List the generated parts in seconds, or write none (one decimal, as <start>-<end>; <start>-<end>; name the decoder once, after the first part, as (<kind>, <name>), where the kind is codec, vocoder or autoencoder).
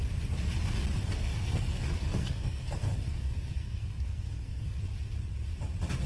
1.1-4.8 (codec, SNAC)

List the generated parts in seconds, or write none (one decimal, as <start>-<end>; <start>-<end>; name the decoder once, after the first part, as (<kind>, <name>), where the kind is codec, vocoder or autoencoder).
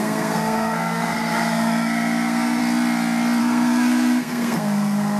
0.0-2.6 (codec, SNAC); 3.4-5.2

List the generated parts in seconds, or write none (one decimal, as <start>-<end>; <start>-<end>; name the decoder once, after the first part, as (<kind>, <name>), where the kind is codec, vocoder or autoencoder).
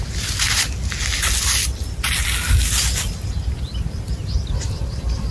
none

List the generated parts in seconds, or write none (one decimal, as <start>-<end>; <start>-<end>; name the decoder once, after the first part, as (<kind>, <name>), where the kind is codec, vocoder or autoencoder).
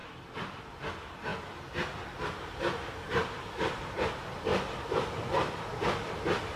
0.0-0.6 (vocoder, BigVGAN v2); 4.5-6.1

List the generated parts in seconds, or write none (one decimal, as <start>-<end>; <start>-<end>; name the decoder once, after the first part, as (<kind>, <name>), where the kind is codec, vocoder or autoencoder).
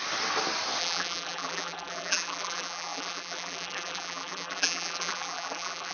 0.8-5.9 (vocoder, BigVGAN v2)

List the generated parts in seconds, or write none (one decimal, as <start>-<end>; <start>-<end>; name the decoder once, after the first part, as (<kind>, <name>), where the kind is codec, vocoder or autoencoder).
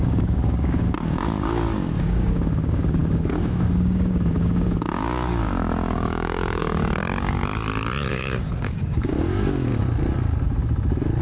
0.0-7.0 (codec, DAC); 8.1-9.7